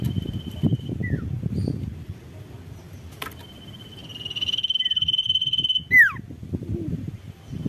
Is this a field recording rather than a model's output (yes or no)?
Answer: yes